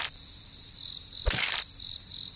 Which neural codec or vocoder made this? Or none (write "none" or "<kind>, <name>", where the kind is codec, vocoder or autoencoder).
none